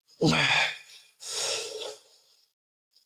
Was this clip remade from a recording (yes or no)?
no